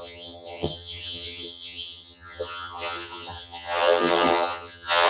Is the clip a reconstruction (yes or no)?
yes